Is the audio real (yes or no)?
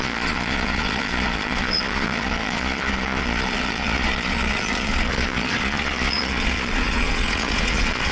no